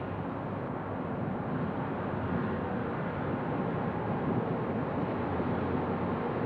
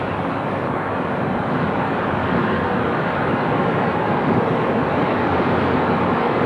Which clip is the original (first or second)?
first